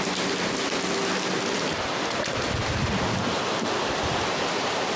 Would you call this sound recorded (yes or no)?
yes